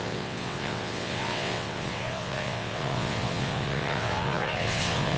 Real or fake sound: fake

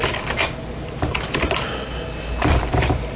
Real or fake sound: real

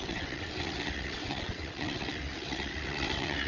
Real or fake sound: fake